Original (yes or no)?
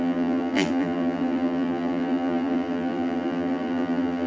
no